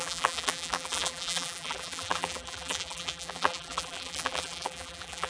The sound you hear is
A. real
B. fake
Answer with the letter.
B